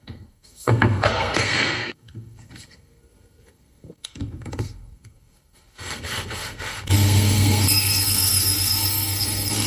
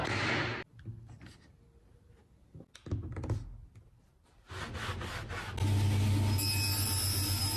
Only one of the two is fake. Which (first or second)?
first